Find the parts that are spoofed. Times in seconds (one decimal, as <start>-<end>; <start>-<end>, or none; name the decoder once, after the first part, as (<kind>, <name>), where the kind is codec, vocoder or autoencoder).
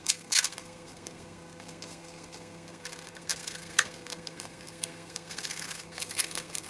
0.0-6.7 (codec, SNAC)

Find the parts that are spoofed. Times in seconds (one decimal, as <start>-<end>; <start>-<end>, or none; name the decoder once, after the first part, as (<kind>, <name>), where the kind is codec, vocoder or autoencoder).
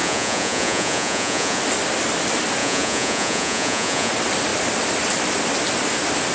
0.0-1.6 (vocoder, Vocos); 2.6-4.1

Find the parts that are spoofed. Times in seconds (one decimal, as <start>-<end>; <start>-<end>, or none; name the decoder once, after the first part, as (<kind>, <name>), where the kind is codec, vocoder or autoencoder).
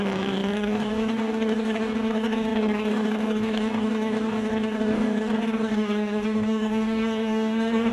0.0-7.9 (codec, DAC)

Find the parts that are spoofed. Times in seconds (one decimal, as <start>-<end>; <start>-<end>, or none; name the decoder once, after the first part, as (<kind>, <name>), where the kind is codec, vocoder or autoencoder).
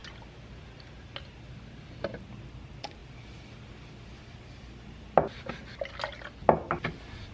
none